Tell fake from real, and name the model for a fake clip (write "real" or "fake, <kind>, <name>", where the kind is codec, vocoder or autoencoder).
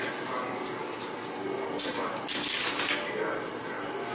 real